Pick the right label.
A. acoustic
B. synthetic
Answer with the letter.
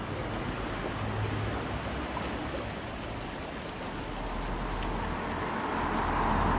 A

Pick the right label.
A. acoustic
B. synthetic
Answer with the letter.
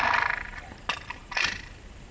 A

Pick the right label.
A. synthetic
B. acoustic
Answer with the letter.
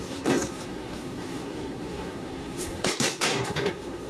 A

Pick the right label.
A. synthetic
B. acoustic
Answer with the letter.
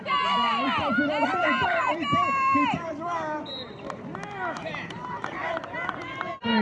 A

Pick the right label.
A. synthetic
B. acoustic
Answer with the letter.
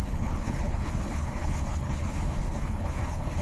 A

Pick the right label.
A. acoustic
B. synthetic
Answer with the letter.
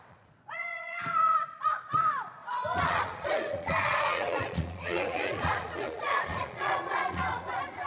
B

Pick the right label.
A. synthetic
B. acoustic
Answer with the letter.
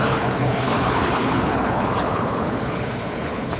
A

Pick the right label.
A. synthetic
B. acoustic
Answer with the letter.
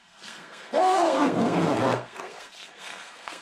A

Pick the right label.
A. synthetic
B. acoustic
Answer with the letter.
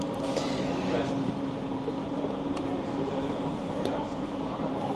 A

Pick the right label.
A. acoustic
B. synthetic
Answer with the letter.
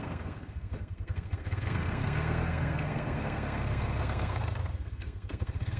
B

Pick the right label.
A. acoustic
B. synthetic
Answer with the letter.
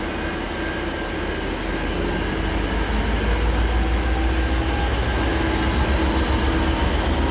A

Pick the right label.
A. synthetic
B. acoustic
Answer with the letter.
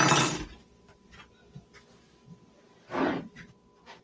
B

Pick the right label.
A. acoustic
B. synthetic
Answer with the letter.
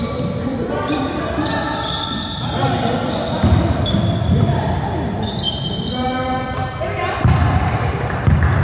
A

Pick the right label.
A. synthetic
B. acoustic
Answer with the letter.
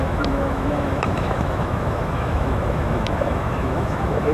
A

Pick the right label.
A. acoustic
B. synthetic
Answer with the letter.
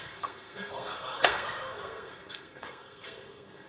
B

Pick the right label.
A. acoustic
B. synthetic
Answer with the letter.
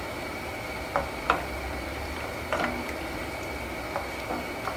A